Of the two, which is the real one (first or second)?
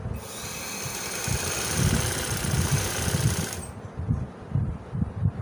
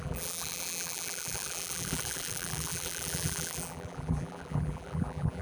first